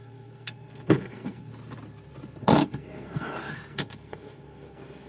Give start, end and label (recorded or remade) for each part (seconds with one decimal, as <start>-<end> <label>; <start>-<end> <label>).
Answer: 0.0-1.5 remade; 1.5-2.4 recorded; 2.4-5.1 remade